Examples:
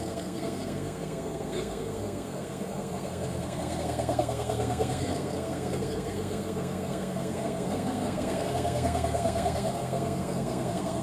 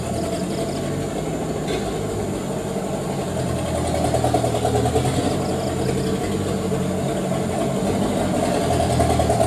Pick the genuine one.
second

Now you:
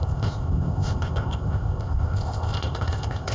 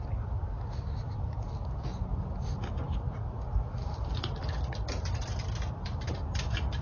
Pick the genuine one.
second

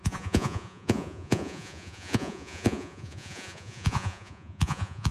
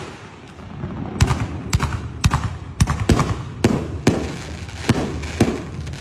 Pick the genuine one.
second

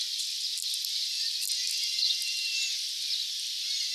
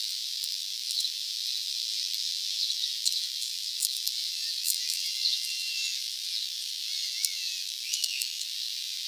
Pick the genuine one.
first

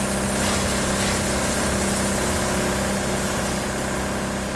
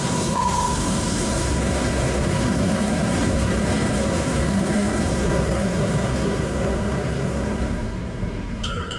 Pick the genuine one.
first